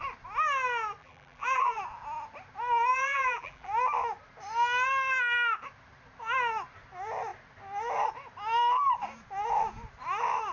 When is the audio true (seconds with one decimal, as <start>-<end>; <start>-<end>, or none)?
0.0-1.0; 1.8-2.9; 3.7-10.5